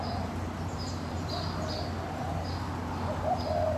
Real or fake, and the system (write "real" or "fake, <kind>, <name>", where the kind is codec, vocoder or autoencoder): real